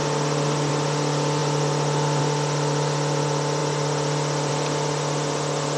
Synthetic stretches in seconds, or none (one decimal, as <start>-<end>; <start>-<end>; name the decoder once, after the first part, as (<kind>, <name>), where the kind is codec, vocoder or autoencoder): none